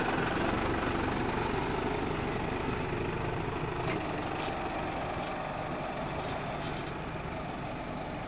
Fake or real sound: real